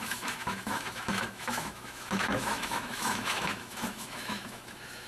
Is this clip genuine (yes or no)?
no